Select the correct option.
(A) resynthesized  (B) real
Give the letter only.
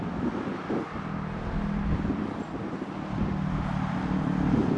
B